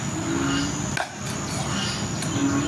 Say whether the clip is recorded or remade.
recorded